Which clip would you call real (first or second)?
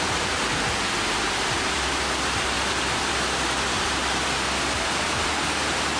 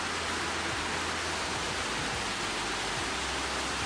second